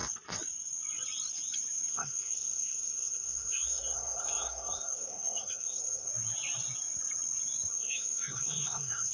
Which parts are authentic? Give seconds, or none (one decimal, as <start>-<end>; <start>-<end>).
0.0-1.9; 6.1-7.7